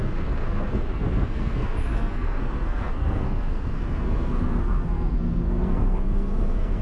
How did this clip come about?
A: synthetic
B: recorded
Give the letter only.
A